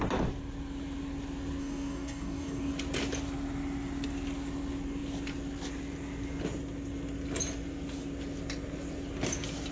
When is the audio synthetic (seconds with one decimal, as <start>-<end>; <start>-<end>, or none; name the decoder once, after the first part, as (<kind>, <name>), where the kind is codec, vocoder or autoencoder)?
1.6-2.7 (codec, DAC)

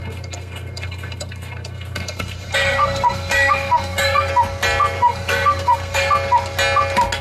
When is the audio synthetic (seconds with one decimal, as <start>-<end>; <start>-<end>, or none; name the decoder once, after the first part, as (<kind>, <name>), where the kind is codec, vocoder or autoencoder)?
0.0-4.3 (codec, SNAC); 5.0-6.1

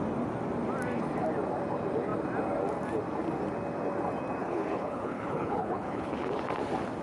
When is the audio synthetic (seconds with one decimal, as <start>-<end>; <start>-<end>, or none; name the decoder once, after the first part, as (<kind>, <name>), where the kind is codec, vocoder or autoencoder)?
4.4-6.1 (codec, HILCodec)

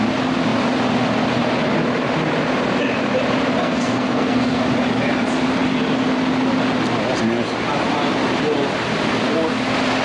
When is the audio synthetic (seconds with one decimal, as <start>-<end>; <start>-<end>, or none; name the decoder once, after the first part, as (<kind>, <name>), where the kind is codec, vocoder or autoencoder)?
3.6-4.6 (codec, SNAC)

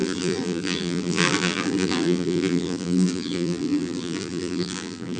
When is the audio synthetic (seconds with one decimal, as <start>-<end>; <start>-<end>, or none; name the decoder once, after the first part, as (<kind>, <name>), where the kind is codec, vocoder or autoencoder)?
0.0-5.2 (vocoder, BigVGAN v2)

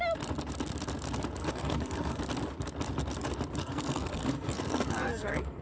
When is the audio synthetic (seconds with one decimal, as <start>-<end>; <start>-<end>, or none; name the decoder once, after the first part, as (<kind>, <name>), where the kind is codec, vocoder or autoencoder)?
1.4-2.2 (codec, SNAC); 3.6-5.6

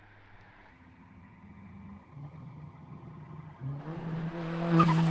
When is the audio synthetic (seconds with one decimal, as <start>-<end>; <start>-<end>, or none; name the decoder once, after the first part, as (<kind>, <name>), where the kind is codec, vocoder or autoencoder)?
0.7-3.8 (vocoder, HiFi-GAN)

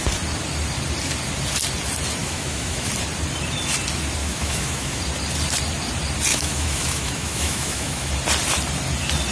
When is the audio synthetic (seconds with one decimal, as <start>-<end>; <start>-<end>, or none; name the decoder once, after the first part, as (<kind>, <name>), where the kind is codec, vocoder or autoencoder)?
2.2-2.9 (autoencoder, DAC-VAE); 4.2-5.0; 6.3-8.1